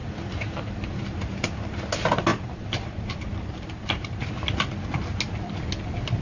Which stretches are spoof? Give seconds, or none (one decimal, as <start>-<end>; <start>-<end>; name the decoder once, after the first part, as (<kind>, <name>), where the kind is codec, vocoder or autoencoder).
0.0-1.8 (vocoder, BigVGAN v2); 2.3-4.2